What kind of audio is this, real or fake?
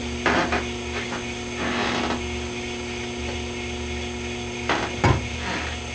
real